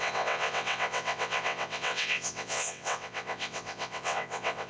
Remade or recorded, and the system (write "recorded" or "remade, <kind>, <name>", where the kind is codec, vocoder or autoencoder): remade, vocoder, WaveNeXt